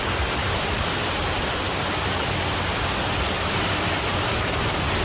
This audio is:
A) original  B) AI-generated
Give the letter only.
A